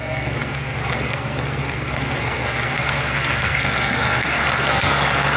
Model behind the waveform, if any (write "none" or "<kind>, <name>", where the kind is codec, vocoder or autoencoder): codec, SNAC